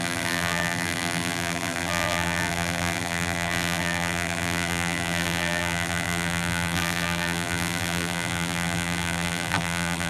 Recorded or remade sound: remade